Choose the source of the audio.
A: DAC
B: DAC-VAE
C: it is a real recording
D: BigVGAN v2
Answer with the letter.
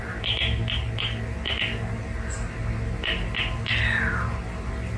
C